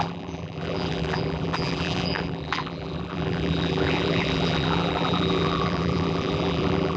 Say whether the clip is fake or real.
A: fake